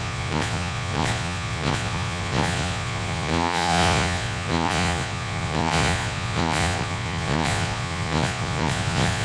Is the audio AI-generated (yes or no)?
yes